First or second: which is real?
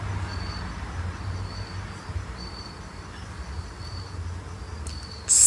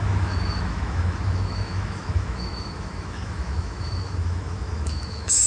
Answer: first